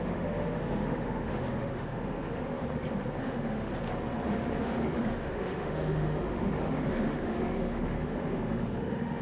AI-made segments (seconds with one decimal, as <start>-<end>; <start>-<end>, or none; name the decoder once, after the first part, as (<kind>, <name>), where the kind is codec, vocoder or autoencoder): 0.0-2.6 (autoencoder, DAC-VAE); 3.2-3.7; 4.6-9.2